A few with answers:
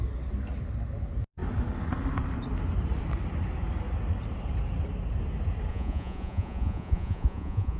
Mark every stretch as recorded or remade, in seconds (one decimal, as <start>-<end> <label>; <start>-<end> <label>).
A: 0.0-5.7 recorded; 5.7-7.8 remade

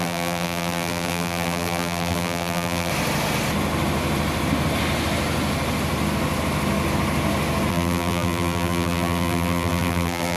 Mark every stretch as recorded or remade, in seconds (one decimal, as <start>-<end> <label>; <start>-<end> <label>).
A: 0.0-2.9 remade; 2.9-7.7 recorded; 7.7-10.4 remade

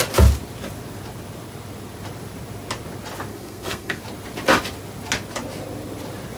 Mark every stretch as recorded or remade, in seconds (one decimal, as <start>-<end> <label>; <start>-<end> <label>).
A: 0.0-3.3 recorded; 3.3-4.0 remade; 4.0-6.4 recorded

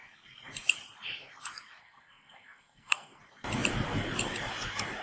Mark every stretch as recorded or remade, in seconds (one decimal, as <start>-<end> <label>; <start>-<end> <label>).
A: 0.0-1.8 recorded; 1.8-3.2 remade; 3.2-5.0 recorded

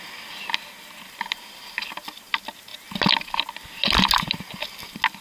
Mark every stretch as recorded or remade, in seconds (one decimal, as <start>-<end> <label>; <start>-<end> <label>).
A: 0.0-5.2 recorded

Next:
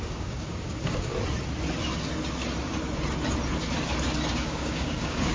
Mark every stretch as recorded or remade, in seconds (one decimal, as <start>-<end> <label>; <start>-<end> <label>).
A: 0.0-1.1 remade; 1.1-4.3 recorded; 4.3-5.3 remade

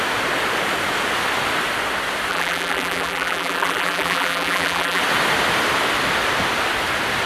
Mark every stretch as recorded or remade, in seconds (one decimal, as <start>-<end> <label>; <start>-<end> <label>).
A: 0.0-2.3 recorded; 2.3-5.0 remade; 5.0-7.3 recorded